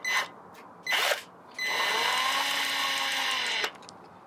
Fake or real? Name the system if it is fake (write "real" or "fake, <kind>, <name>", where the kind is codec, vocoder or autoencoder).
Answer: real